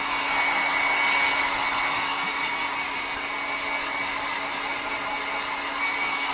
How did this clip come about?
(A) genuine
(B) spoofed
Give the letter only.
A